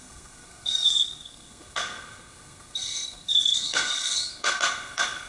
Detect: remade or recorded remade